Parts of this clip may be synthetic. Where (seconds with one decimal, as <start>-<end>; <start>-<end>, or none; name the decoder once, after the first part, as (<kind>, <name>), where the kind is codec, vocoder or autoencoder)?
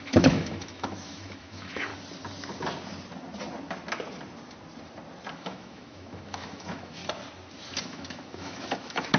0.0-1.9 (autoencoder, DAC-VAE); 5.3-7.0; 7.8-9.2